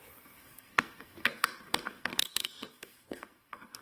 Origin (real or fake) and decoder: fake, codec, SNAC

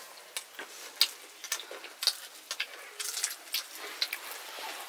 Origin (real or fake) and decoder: real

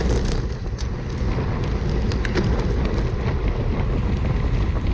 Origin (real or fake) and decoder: real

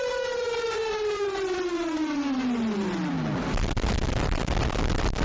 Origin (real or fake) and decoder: real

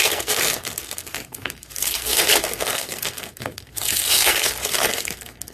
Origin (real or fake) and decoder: fake, codec, SNAC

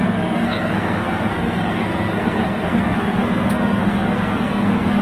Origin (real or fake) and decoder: fake, codec, SNAC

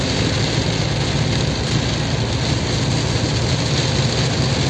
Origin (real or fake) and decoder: real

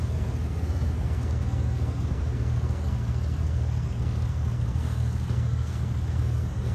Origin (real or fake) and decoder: fake, codec, SNAC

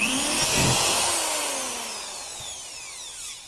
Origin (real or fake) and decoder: real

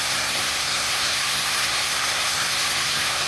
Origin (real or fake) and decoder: fake, codec, SNAC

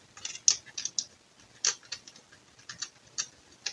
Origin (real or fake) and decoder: real